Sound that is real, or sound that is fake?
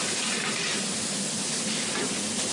real